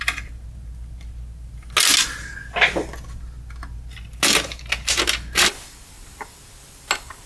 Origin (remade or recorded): recorded